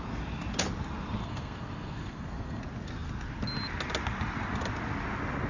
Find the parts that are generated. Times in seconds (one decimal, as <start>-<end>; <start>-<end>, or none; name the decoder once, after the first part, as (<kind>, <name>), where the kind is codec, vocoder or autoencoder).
1.2-2.6 (codec, SNAC)